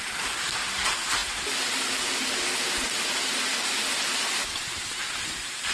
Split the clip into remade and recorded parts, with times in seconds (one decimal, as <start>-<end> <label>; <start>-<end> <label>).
0.0-5.7 recorded